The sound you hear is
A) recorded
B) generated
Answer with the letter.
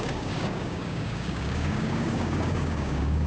B